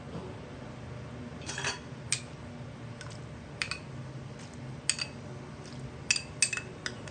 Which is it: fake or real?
real